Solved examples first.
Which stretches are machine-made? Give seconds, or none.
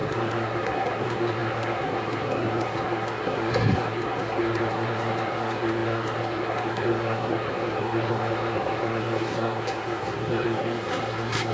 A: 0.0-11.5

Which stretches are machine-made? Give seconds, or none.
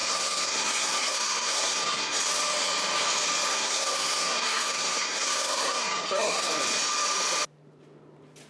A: 0.0-2.2; 3.5-6.5